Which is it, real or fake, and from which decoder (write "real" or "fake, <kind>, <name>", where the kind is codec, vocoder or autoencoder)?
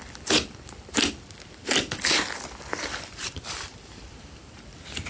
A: fake, vocoder, BigVGAN v2